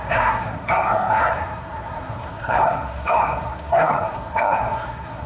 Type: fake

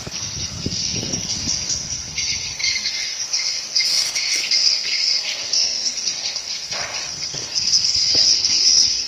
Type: fake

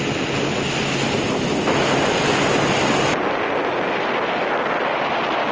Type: real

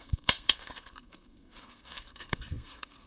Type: fake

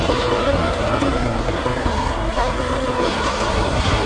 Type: fake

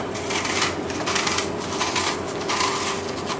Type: real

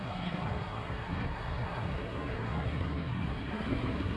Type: fake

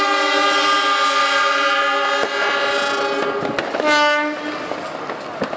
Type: real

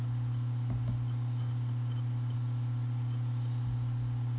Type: real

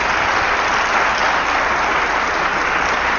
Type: real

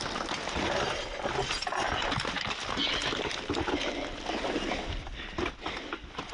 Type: real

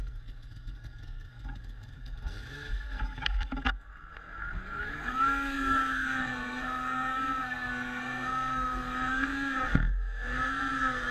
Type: fake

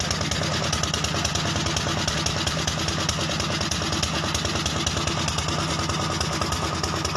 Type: real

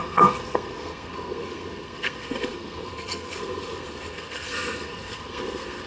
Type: fake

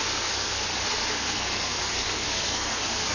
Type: fake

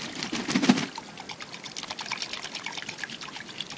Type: real